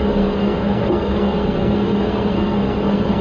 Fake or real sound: fake